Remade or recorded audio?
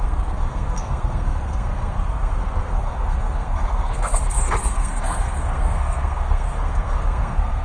remade